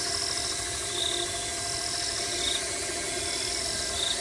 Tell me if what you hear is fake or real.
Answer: real